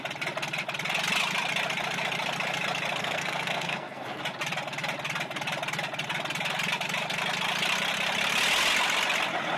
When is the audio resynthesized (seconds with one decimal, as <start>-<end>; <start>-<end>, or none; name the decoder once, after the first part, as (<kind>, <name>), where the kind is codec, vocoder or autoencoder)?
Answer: 3.0-4.2 (codec, SNAC)